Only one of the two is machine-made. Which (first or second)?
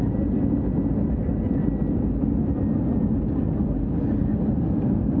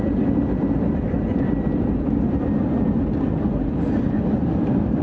second